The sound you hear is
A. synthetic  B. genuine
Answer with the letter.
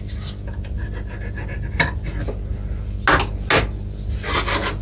B